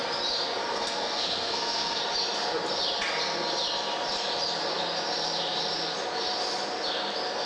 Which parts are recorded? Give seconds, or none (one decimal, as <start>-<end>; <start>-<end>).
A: 0.0-0.7; 2.0-7.5

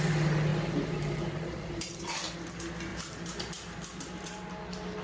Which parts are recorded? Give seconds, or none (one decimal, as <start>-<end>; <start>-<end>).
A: 0.0-0.5; 2.3-2.9; 4.5-5.0

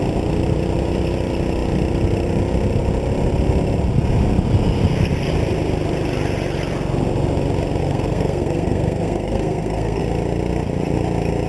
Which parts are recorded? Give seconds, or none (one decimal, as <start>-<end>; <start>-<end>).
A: 0.0-7.8; 10.0-11.5

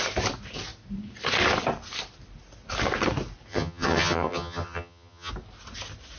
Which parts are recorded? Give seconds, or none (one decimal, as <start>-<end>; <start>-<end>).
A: 0.0-3.5; 5.3-6.2

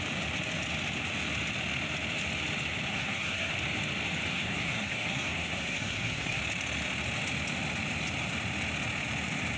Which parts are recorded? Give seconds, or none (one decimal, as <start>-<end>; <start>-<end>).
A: 0.0-2.9; 3.5-4.3; 6.4-9.6

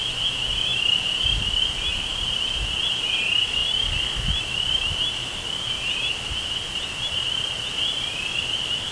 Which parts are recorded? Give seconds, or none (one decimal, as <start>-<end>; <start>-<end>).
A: 0.0-8.9

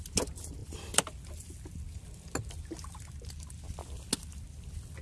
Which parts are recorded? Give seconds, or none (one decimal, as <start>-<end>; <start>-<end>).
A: 0.0-5.0

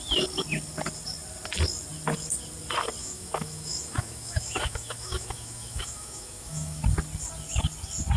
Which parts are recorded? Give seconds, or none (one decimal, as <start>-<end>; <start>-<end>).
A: 0.0-3.0; 6.8-8.2